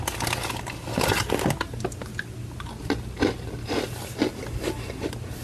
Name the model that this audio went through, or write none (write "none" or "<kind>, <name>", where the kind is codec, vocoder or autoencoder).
none